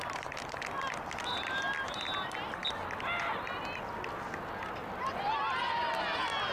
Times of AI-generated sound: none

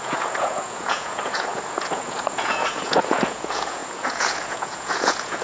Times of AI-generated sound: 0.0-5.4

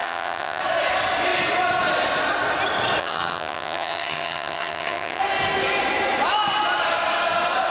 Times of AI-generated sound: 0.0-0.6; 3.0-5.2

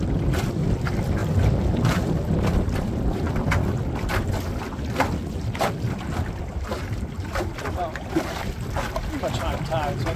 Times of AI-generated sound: none